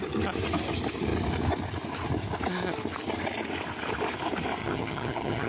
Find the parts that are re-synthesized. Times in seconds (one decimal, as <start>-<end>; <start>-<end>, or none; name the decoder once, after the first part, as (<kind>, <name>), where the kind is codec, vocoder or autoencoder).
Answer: 4.6-5.5 (vocoder, HiFi-GAN)